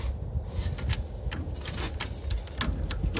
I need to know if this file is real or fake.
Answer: real